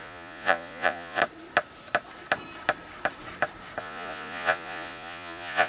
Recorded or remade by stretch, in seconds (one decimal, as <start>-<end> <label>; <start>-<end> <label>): 0.0-1.2 remade; 1.2-3.8 recorded; 3.8-5.7 remade